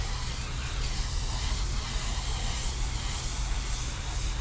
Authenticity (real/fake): real